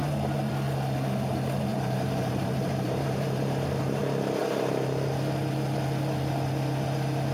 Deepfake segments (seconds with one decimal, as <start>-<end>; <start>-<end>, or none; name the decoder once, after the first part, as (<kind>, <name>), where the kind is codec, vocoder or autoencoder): 1.7-4.0 (vocoder, BigVGAN v2)